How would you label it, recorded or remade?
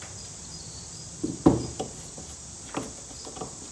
recorded